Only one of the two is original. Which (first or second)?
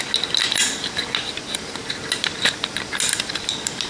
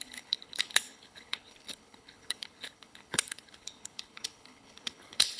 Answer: first